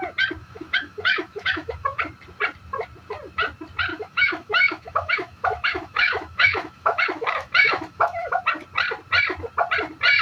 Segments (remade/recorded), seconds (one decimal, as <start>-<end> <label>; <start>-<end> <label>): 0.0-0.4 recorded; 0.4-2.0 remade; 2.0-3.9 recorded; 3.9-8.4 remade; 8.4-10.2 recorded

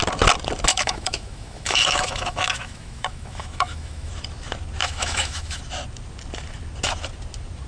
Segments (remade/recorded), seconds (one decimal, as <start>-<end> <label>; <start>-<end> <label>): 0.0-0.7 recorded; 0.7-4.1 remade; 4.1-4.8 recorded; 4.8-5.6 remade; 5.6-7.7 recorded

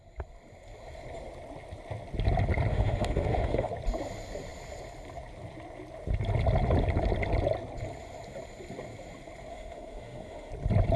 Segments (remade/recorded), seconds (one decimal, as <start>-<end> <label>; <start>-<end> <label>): 0.0-2.7 recorded; 2.7-3.7 remade; 3.7-9.5 recorded; 9.5-10.5 remade; 10.5-11.0 recorded

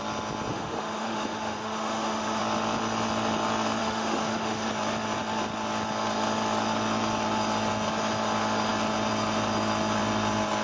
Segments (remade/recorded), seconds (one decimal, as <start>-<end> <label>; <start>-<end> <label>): 0.0-0.5 recorded; 0.5-2.4 remade; 2.4-3.8 recorded; 3.8-4.7 remade; 4.7-10.6 recorded